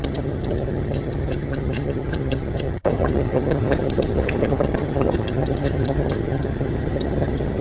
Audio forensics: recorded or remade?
remade